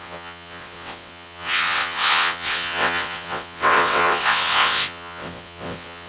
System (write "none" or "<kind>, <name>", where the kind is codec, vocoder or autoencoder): vocoder, WaveNeXt